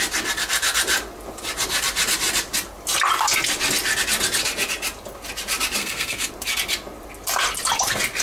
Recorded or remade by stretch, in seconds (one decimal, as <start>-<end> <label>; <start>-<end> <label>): 0.0-5.8 recorded; 5.8-6.3 remade; 6.3-8.2 recorded